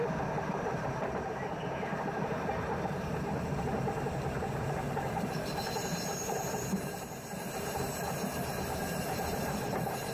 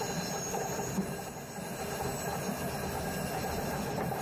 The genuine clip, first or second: second